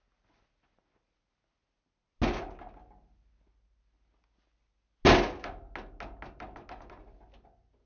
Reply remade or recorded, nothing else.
recorded